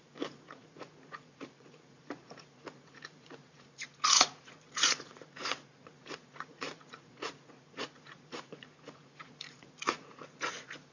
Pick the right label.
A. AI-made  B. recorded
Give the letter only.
A